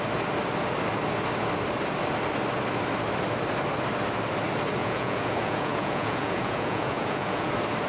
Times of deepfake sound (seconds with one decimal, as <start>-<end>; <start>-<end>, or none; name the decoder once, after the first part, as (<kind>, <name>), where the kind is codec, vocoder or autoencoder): 4.8-7.5 (vocoder, Vocos)

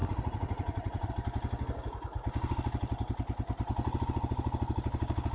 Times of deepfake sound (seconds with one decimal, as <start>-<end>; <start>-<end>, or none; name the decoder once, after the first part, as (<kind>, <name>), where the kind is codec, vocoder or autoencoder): 0.0-1.1 (vocoder, Vocos)

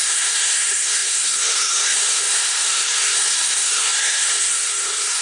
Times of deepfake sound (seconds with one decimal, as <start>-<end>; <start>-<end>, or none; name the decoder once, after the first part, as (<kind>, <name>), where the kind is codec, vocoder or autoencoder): 0.0-5.2 (codec, SNAC)